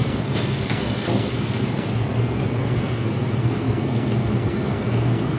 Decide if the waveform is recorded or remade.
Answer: remade